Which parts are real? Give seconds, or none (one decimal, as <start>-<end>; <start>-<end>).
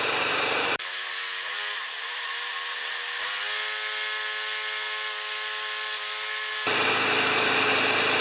2.5-6.5